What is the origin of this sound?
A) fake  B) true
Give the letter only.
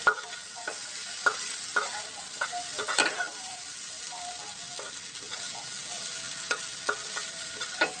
B